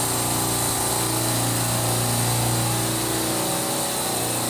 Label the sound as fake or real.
real